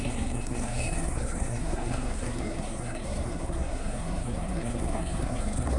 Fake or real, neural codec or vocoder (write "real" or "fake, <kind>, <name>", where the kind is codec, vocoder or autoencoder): fake, codec, SNAC